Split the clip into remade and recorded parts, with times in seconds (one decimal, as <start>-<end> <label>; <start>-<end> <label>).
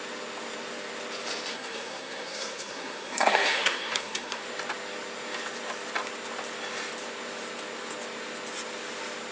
0.0-1.5 recorded; 1.5-4.4 remade; 4.4-9.3 recorded